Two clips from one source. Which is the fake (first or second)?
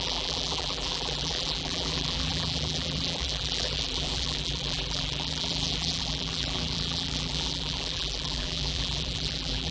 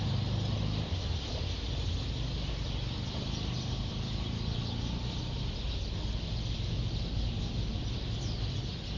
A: first